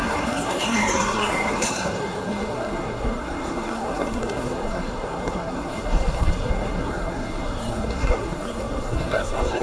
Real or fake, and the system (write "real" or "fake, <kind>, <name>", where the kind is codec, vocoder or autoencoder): fake, codec, SNAC